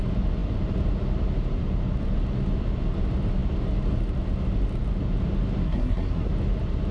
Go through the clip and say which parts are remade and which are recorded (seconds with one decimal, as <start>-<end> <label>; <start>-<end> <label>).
0.0-5.6 recorded; 5.6-6.3 remade; 6.3-6.9 recorded